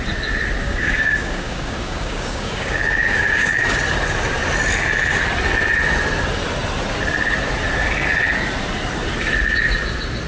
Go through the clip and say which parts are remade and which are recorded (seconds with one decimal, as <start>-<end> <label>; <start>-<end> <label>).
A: 0.0-0.6 recorded; 0.6-3.8 remade; 3.8-10.3 recorded